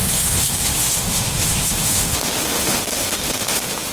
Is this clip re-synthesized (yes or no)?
yes